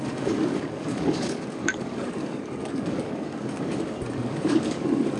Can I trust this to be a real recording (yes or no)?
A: no